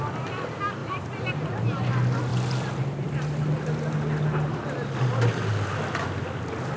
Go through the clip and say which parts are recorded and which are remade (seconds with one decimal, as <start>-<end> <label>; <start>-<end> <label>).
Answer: 0.0-0.8 recorded; 0.8-1.6 remade; 1.6-6.8 recorded